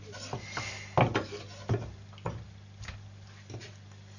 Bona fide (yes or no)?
yes